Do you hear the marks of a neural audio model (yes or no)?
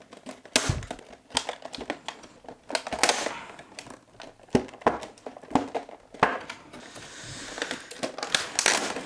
no